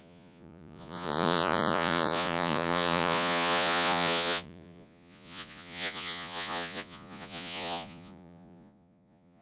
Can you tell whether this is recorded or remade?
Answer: remade